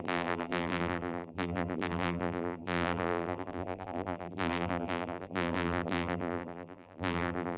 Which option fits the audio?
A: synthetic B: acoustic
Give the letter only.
A